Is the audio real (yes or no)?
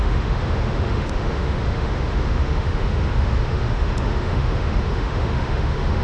no